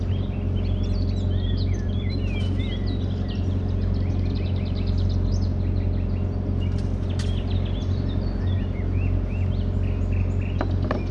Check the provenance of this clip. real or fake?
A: real